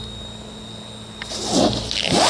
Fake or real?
real